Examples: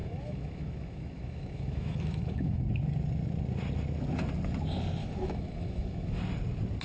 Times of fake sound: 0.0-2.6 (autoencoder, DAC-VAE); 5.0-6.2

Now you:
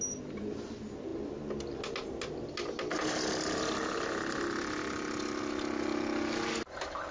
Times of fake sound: none

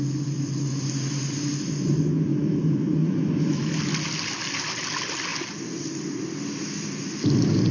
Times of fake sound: 2.3-3.7 (autoencoder, DAC-VAE)

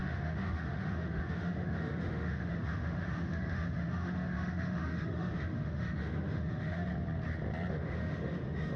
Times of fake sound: 0.0-6.9 (autoencoder, DAC-VAE); 7.7-8.8